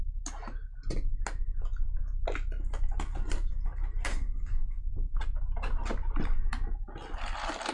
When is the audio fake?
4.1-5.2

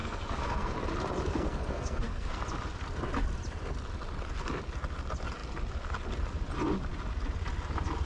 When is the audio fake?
0.0-0.7; 1.3-2.4

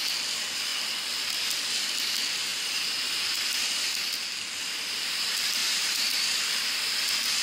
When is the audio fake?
2.5-3.6; 5.6-6.4

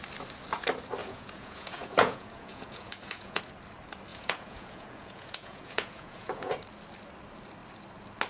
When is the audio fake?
1.0-3.4; 4.1-6.5

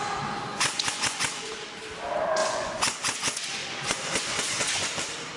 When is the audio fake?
0.5-1.5; 2.4-4.9

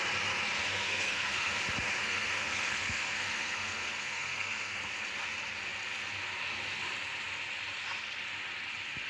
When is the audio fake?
0.7-1.5; 2.0-4.8